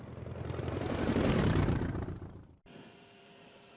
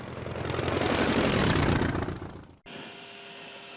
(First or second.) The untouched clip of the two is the second